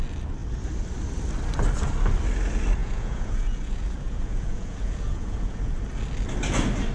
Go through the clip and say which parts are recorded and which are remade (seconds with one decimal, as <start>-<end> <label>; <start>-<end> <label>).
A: 0.0-2.8 recorded; 2.8-5.7 remade; 5.7-6.9 recorded